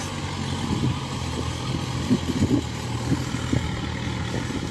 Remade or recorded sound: recorded